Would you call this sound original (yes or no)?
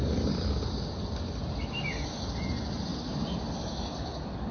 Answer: yes